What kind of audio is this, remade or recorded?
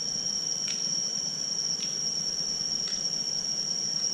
recorded